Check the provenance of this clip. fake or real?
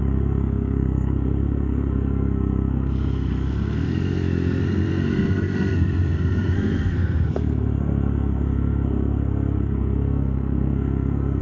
fake